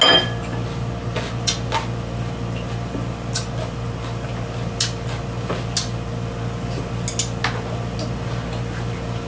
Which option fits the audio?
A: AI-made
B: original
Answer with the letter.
B